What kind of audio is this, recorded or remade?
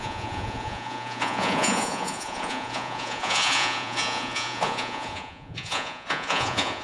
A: remade